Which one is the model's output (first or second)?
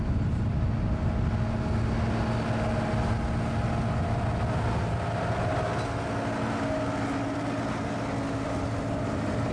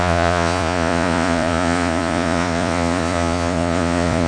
second